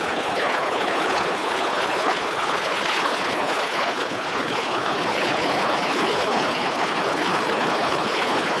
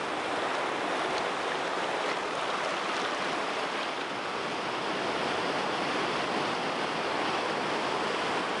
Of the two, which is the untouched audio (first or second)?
second